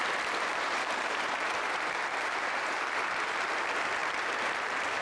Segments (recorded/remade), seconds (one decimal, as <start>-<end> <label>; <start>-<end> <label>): 0.0-0.5 recorded; 0.5-3.5 remade; 3.5-4.0 recorded; 4.0-5.0 remade